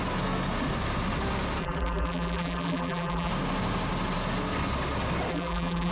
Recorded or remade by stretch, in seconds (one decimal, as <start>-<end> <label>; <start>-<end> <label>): 0.0-1.6 recorded; 1.6-3.3 remade; 3.3-5.3 recorded; 5.3-5.9 remade